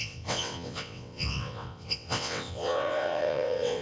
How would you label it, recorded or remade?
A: remade